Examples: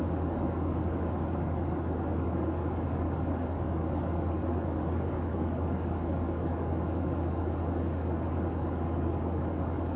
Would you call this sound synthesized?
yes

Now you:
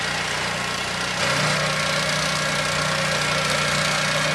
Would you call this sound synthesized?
no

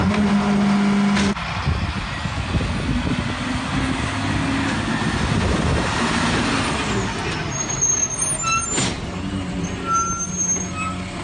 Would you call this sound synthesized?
no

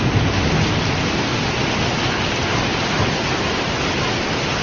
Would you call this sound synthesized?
no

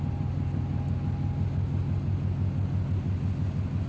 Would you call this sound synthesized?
no